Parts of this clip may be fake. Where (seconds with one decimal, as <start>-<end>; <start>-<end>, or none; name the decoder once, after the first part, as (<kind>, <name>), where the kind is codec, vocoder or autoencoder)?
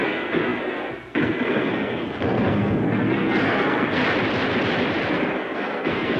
0.0-4.0 (codec, SNAC); 5.1-6.2